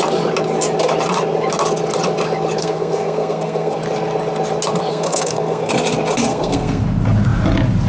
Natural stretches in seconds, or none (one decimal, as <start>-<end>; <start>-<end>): 0.0-2.6; 3.8-4.9; 5.7-6.3; 6.8-7.9